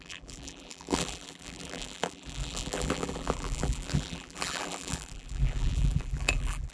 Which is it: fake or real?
fake